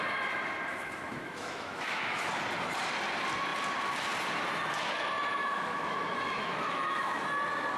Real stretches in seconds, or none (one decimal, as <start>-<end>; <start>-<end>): 0.0-0.7; 2.3-5.4; 7.2-7.8